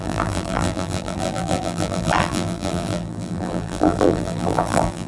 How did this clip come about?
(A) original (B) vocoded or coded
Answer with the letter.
B